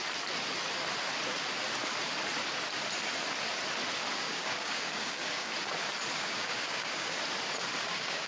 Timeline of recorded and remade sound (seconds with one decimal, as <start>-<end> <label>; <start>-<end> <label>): 0.0-4.1 recorded; 4.1-5.5 remade; 5.5-6.2 recorded; 6.2-7.2 remade; 7.2-7.8 recorded; 7.8-8.3 remade